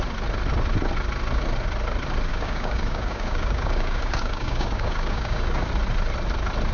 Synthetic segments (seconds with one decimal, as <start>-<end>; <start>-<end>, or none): 2.3-5.7

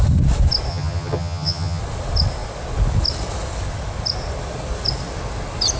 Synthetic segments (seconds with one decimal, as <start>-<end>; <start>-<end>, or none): 0.7-1.8

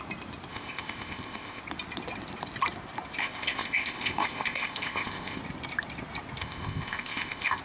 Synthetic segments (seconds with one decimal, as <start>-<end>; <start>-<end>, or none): 0.5-1.6; 3.2-5.4; 6.4-7.6